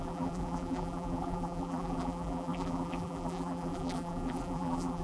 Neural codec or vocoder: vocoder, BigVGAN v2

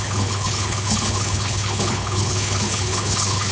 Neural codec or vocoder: codec, HILCodec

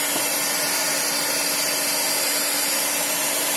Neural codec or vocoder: none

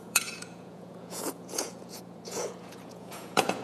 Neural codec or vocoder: vocoder, Vocos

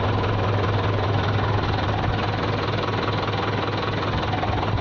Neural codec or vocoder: none